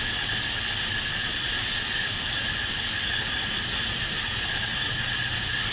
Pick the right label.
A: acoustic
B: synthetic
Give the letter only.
A